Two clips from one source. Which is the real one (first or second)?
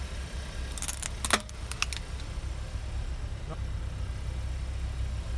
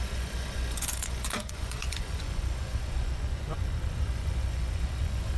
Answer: first